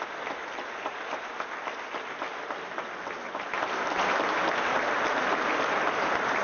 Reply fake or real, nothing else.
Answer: real